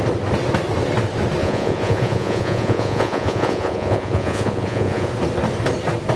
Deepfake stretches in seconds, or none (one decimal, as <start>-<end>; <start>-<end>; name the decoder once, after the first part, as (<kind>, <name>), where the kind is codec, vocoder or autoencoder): 1.4-5.1 (vocoder, Vocos)